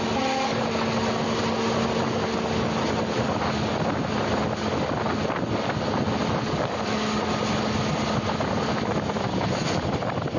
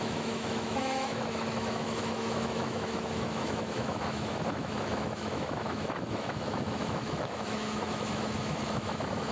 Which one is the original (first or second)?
first